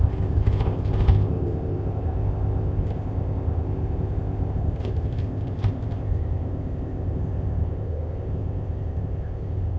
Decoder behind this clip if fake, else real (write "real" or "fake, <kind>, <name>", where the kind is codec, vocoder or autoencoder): fake, codec, ZipCodec